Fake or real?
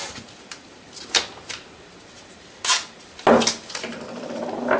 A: real